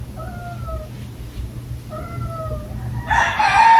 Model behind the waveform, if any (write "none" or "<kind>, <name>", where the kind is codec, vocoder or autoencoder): none